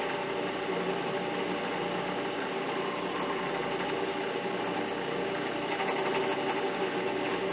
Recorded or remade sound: recorded